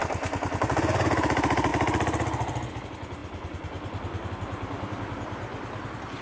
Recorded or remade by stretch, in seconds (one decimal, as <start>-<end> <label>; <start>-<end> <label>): 0.0-1.7 recorded; 1.7-2.7 remade; 2.7-3.2 recorded; 3.2-4.3 remade; 4.3-6.2 recorded